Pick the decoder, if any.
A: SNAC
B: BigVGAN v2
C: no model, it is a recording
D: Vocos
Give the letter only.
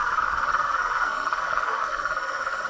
A